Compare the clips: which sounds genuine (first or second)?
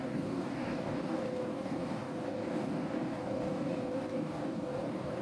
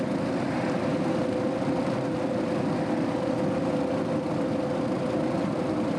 second